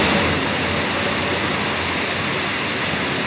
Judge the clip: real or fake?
real